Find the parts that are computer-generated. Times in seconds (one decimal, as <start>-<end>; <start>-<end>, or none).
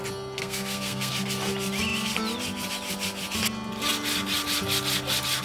0.4-1.1